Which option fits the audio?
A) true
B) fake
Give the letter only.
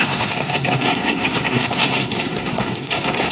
B